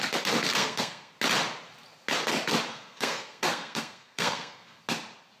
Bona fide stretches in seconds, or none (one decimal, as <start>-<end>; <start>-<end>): 0.0-0.5; 1.1-2.7; 4.8-5.4